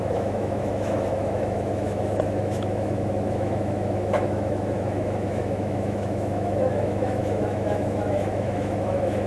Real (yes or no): no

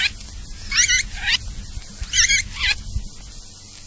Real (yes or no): yes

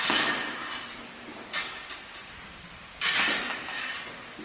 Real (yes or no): yes